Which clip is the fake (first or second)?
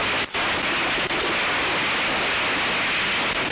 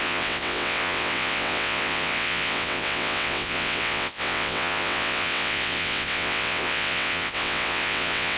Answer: second